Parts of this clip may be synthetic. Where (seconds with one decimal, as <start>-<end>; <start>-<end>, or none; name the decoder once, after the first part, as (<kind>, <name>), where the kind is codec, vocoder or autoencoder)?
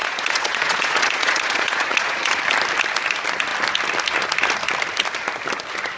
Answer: 0.0-2.4 (vocoder, Vocos)